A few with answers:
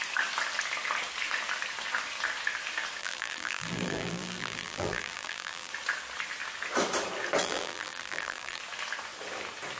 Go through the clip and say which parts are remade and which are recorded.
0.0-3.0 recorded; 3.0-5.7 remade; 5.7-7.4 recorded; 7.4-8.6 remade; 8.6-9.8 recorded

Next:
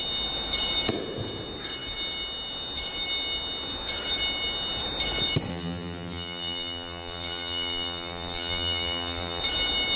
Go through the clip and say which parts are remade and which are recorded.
0.0-5.5 recorded; 5.5-9.4 remade; 9.4-10.0 recorded

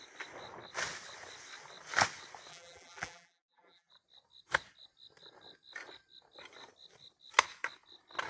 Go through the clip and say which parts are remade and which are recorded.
0.0-2.5 recorded; 2.5-3.9 remade; 3.9-8.3 recorded

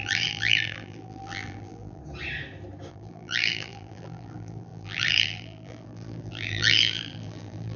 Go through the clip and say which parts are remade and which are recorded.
0.0-2.0 remade; 2.0-2.9 recorded; 2.9-7.8 remade

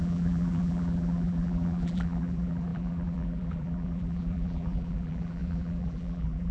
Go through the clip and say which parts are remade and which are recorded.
0.0-6.5 remade

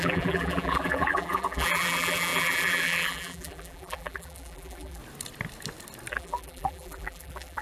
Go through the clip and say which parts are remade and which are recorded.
0.0-5.0 remade; 5.0-6.1 recorded; 6.1-7.6 remade

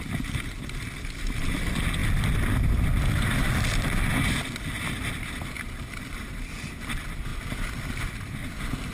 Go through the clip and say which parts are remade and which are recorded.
0.0-2.0 recorded; 2.0-6.7 remade; 6.7-7.3 recorded; 7.3-8.0 remade; 8.0-8.9 recorded